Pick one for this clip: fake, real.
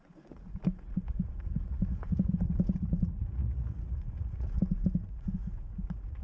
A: fake